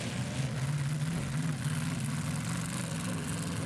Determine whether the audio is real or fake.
real